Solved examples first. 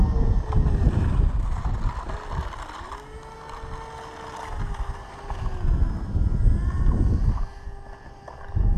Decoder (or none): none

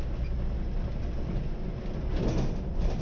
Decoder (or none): none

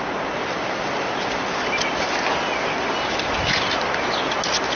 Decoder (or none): none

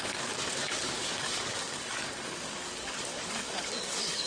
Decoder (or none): codec, DAC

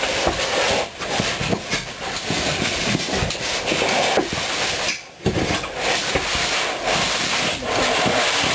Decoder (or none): none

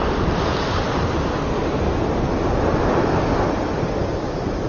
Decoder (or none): none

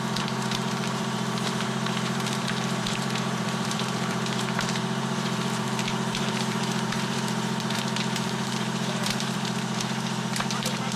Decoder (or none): vocoder, BigVGAN v2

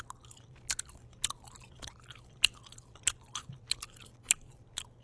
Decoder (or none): none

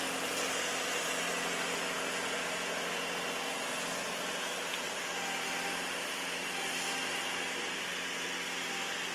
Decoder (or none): none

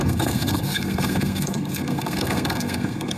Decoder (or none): codec, SNAC